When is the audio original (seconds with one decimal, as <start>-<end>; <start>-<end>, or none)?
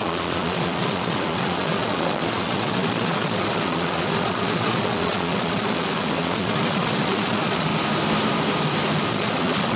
7.7-9.1